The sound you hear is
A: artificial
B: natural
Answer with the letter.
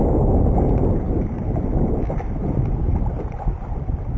B